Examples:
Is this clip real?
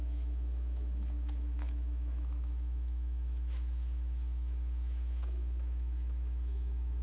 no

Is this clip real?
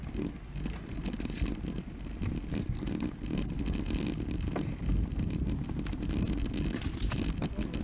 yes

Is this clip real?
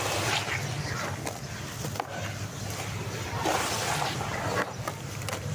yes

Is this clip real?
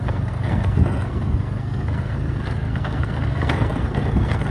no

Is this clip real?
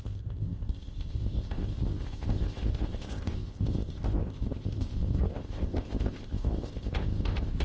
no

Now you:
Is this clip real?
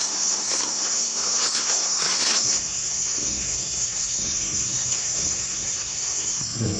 no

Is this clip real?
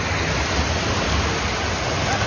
yes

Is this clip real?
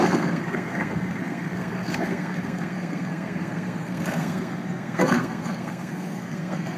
no